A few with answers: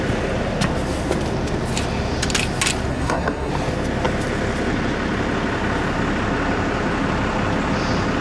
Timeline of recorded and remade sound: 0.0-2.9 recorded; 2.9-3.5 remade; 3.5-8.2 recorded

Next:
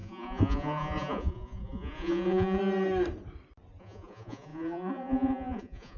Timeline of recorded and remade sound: 0.0-2.6 remade; 2.6-3.8 recorded; 3.8-6.0 remade

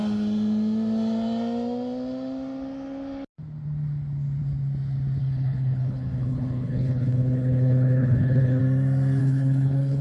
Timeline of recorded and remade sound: 0.0-5.2 recorded; 5.2-8.6 remade; 8.6-9.2 recorded; 9.2-10.0 remade

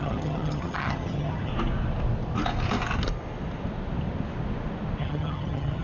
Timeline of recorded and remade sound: 0.0-1.5 remade; 1.5-5.0 recorded; 5.0-5.8 remade

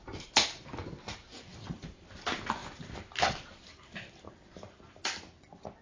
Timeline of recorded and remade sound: 0.0-5.8 recorded

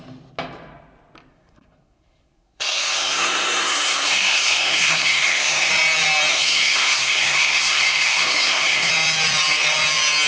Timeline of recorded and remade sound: 0.0-1.3 recorded; 1.3-5.7 remade; 5.7-6.3 recorded; 6.3-8.9 remade; 8.9-10.3 recorded

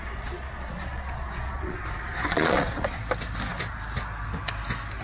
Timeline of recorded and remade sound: 0.0-3.0 remade; 3.0-5.0 recorded

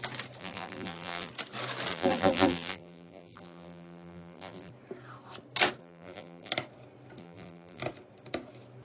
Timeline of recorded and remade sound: 0.0-0.4 recorded; 0.4-1.3 remade; 1.3-1.9 recorded; 1.9-4.7 remade; 4.7-5.8 recorded; 5.8-6.5 remade; 6.5-7.2 recorded; 7.2-7.8 remade; 7.8-8.8 recorded